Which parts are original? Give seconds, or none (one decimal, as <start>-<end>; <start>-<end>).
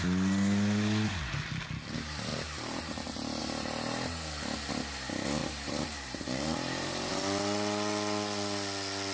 0.0-2.3; 3.4-5.4; 7.1-9.1